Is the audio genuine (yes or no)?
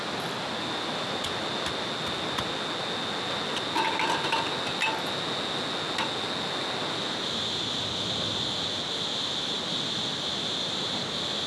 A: yes